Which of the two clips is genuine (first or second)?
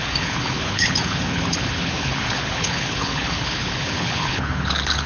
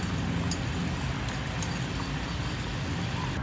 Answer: second